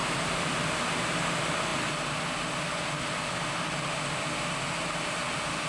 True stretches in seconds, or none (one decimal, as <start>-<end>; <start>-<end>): 0.7-5.7